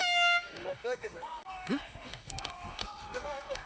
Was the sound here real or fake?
fake